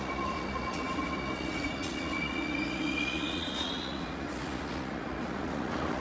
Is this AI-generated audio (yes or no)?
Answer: yes